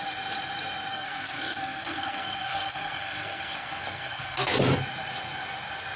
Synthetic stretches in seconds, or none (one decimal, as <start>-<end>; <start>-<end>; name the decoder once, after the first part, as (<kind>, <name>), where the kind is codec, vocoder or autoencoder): 0.9-4.5 (codec, SNAC)